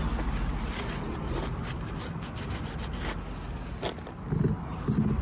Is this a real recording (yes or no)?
yes